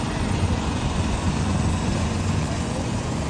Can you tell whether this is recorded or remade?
remade